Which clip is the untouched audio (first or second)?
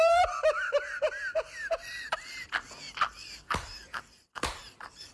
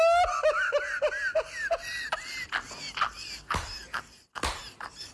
second